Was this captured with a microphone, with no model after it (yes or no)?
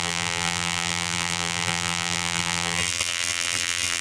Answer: no